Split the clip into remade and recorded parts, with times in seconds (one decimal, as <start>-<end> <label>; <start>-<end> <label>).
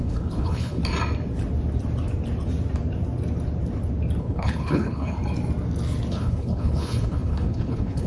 0.0-0.8 remade; 0.8-4.2 recorded; 4.2-5.2 remade; 5.2-6.1 recorded; 6.1-8.1 remade